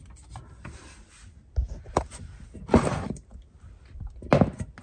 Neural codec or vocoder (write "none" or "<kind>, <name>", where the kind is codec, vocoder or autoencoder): none